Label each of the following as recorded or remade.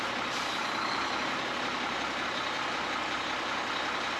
recorded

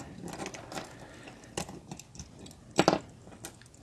recorded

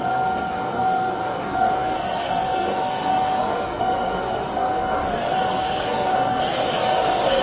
remade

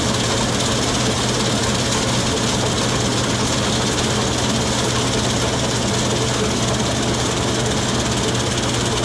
recorded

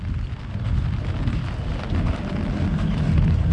recorded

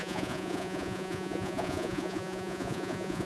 remade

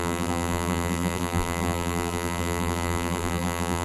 remade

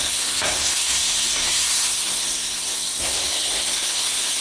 remade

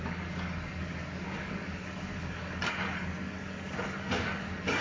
remade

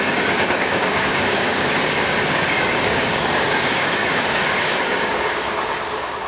remade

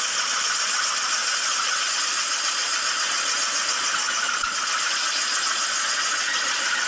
recorded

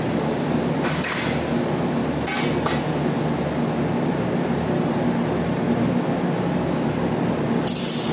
recorded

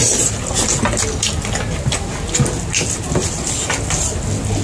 recorded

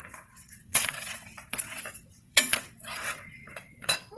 remade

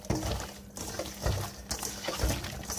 recorded